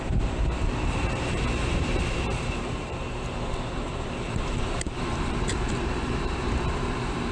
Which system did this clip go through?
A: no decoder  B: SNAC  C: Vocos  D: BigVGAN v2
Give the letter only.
D